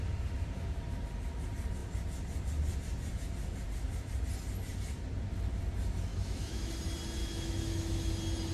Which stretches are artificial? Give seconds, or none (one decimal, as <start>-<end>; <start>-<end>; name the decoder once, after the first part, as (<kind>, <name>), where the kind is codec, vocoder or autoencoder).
6.1-6.7 (autoencoder, DAC-VAE); 7.2-8.1